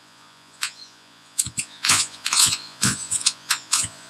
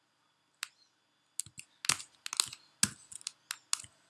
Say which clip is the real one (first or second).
second